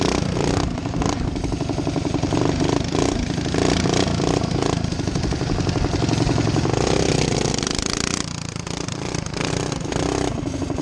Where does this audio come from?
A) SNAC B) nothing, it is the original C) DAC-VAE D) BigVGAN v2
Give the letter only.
B